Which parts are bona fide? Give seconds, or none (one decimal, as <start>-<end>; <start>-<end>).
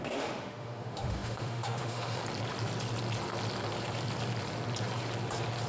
2.2-5.7